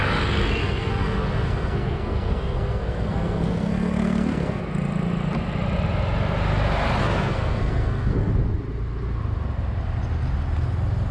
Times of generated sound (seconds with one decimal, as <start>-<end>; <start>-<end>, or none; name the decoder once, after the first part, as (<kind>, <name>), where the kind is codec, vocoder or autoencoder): 0.6-4.6 (codec, SNAC); 7.0-8.3